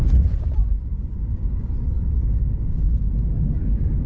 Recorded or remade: recorded